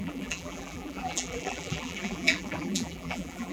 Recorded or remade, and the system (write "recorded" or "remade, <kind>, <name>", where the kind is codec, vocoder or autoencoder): remade, vocoder, BigVGAN v2